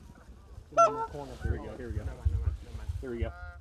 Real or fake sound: real